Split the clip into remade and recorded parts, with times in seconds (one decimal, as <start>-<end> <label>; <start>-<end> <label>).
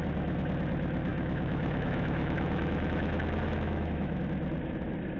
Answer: 0.0-1.1 recorded; 1.1-4.2 remade; 4.2-5.2 recorded